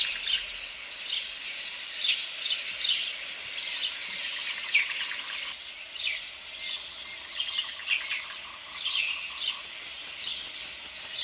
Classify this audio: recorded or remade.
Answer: recorded